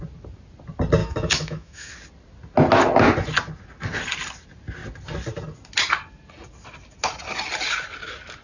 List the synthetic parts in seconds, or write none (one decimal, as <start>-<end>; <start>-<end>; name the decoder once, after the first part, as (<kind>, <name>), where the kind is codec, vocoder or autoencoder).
1.0-1.9 (autoencoder, DAC-VAE)